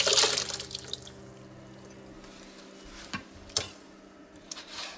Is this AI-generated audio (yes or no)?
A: no